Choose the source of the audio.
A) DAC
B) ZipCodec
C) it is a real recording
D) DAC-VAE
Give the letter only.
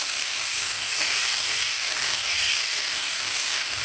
A